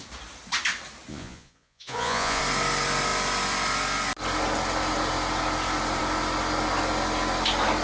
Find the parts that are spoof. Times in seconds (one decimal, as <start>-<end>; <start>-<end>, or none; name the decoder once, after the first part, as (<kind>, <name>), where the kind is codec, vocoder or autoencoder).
1.1-2.4 (vocoder, Vocos)